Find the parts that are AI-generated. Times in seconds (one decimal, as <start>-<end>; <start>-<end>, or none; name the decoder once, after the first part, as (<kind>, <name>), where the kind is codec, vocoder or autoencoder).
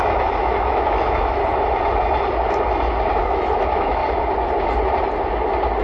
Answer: 0.0-1.4 (autoencoder, DAC-VAE); 3.2-4.0